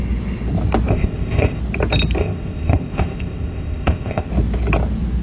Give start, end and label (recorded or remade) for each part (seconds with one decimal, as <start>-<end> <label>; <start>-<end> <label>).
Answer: 0.0-0.9 recorded; 0.9-1.6 remade; 1.6-2.2 recorded; 2.2-4.3 remade; 4.3-5.2 recorded